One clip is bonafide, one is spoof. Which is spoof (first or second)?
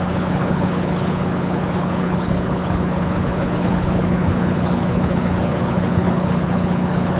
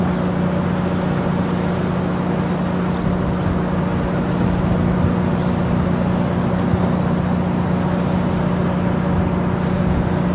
first